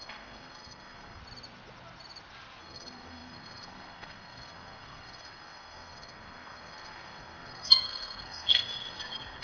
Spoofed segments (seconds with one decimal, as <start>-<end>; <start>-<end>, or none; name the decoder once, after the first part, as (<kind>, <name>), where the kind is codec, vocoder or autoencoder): 0.0-1.2 (codec, SNAC); 2.6-9.4